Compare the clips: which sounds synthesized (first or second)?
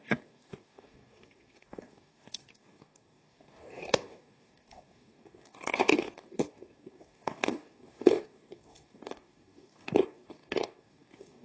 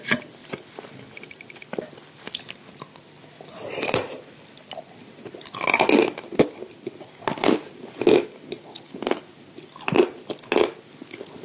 first